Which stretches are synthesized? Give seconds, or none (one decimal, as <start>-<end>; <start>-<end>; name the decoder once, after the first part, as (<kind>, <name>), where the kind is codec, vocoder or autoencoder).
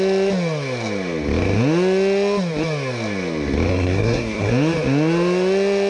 3.7-4.5 (codec, SNAC)